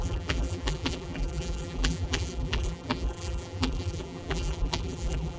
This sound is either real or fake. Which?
fake